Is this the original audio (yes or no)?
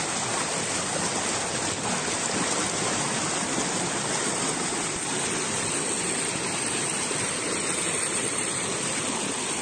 yes